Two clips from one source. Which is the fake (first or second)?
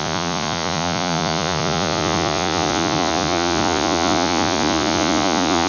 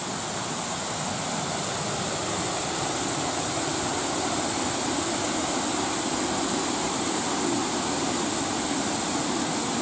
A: first